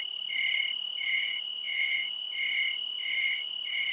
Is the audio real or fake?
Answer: real